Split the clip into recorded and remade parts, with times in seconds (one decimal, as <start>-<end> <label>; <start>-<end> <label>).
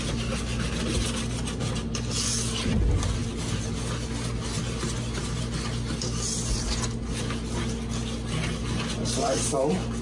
0.0-10.0 recorded